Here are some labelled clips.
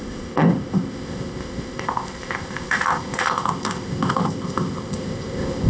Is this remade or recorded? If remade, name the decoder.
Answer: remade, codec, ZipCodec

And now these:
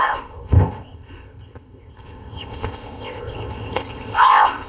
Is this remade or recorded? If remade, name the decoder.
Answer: remade, codec, ZipCodec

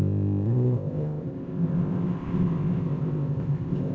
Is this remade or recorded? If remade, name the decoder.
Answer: remade, codec, ZipCodec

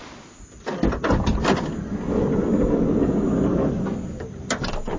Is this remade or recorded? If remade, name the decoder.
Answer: recorded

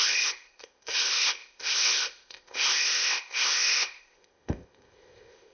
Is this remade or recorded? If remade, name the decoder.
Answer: remade, codec, ZipCodec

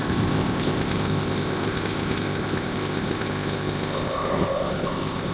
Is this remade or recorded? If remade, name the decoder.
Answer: remade, codec, ZipCodec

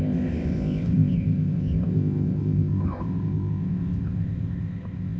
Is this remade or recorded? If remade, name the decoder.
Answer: remade, codec, ZipCodec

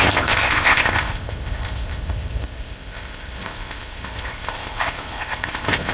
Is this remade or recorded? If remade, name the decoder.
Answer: remade, codec, ZipCodec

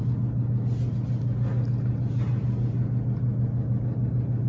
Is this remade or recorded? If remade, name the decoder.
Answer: recorded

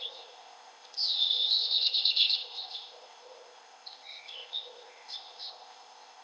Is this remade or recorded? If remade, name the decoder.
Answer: remade, codec, ZipCodec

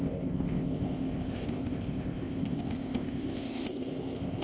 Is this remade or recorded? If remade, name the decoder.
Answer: remade, codec, ZipCodec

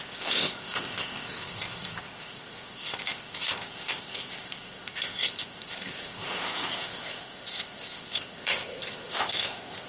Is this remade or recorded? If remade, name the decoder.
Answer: remade, codec, ZipCodec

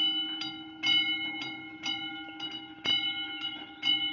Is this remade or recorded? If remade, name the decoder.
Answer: recorded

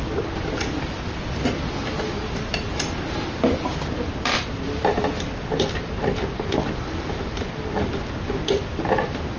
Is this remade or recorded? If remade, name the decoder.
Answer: recorded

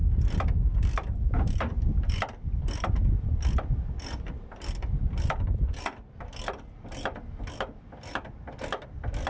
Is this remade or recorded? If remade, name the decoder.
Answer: recorded